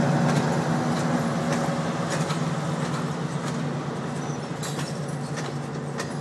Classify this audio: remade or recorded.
recorded